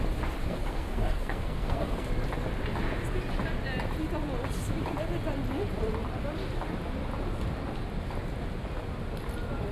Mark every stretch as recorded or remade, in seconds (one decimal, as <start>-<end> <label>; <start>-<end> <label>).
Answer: 0.0-0.4 recorded; 0.4-2.1 remade; 2.1-9.7 recorded